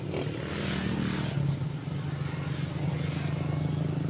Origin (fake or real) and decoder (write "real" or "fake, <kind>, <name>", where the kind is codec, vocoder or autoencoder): real